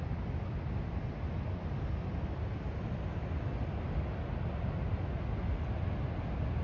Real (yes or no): yes